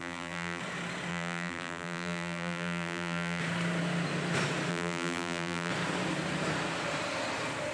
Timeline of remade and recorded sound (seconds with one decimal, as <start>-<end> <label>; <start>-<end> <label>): 0.0-0.6 remade; 0.6-1.1 recorded; 1.1-3.4 remade; 3.4-4.7 recorded; 4.7-5.7 remade; 5.7-7.7 recorded